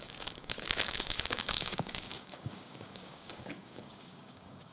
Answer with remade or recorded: remade